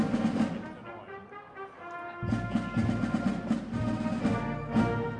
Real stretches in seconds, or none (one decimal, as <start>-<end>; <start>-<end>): 0.0-5.2